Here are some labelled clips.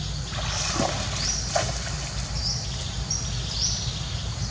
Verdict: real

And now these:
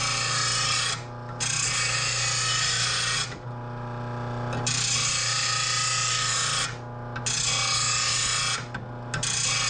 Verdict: real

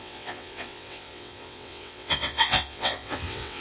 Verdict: fake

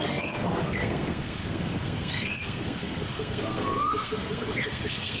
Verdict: fake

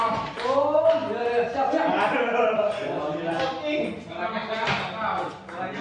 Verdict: real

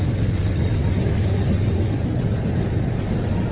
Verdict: real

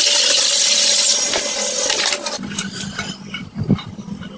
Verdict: real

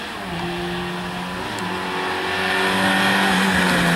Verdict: real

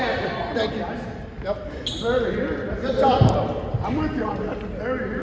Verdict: real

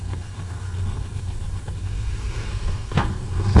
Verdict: fake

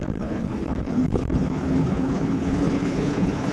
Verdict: fake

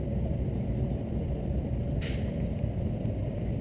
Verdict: real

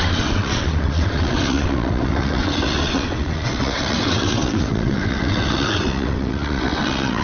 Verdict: fake